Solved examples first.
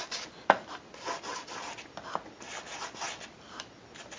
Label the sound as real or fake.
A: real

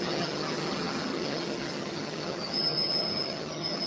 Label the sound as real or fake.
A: fake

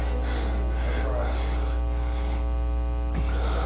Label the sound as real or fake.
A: real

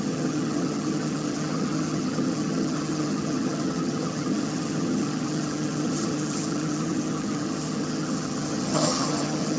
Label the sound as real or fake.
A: fake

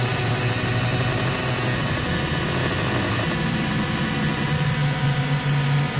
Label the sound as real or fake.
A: real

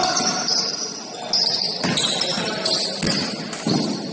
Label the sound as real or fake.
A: real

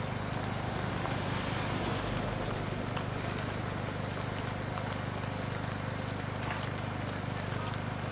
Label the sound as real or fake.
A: real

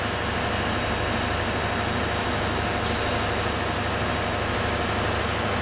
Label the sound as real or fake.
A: real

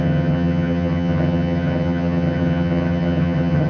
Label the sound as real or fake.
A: fake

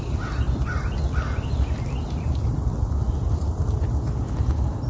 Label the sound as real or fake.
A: real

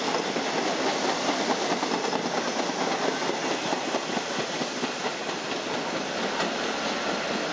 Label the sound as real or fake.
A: real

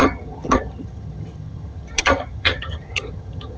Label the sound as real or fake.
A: fake